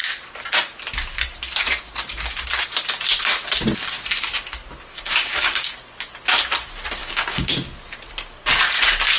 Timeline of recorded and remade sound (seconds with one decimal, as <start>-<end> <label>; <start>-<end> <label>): 0.0-4.9 recorded; 4.9-5.7 remade; 5.7-7.0 recorded; 7.0-7.5 remade; 7.5-9.2 recorded